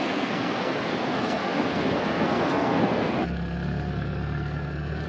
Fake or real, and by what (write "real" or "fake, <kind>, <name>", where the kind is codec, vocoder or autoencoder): fake, codec, SNAC